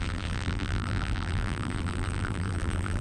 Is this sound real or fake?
fake